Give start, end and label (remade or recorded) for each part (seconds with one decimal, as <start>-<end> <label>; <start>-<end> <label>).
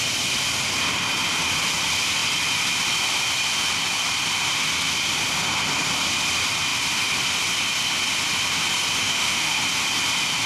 0.0-9.1 recorded; 9.1-9.6 remade; 9.6-10.5 recorded